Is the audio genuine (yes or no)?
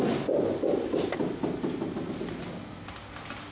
yes